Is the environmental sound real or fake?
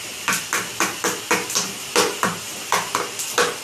real